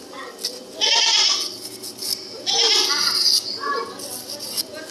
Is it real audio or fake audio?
real